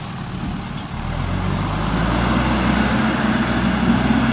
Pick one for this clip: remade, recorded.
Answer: recorded